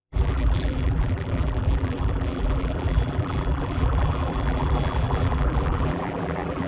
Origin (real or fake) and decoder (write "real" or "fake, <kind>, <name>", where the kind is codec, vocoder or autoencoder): fake, vocoder, BigVGAN v2